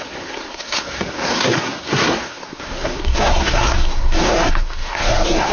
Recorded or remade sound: remade